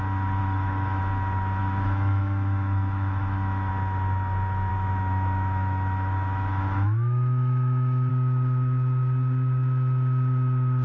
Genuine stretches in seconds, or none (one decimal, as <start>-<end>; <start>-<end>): 0.0-0.4; 1.0-1.6; 3.7-4.7; 8.1-10.8